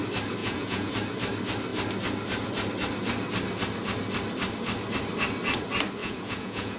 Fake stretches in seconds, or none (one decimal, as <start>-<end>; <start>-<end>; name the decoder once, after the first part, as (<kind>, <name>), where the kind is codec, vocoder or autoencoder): 0.4-0.9 (vocoder, Vocos); 6.0-6.8